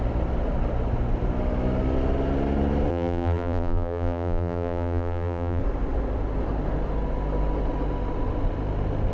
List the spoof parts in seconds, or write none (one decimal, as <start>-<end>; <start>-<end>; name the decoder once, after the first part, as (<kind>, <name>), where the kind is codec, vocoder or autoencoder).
2.9-5.6 (vocoder, BigVGAN v2)